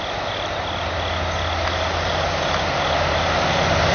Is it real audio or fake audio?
real